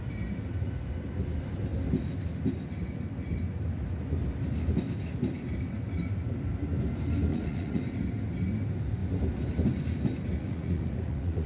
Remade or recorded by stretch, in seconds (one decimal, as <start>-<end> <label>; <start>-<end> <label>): 0.0-7.3 recorded; 7.3-7.8 remade; 7.8-10.4 recorded; 10.4-11.5 remade